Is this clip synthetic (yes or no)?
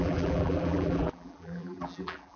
yes